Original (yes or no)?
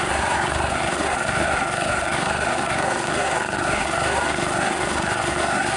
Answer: no